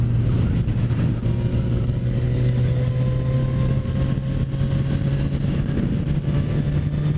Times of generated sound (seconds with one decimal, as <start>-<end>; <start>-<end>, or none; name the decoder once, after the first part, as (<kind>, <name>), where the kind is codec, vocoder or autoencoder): 1.5-2.9 (codec, DAC); 3.4-3.9